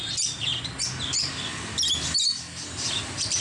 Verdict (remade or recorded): recorded